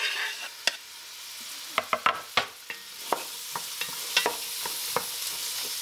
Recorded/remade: recorded